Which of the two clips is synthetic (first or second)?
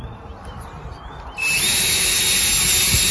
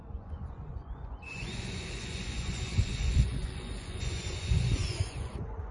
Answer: second